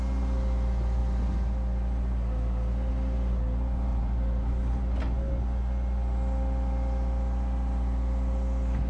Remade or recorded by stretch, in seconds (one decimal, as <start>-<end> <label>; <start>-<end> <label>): 0.0-3.9 recorded; 3.9-4.5 remade; 4.5-8.9 recorded